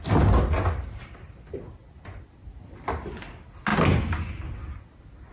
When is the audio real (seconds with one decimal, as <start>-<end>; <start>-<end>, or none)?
0.0-5.3